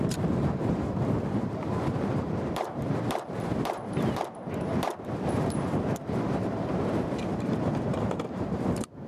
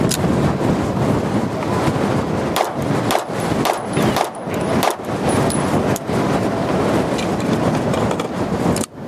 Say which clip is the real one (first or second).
second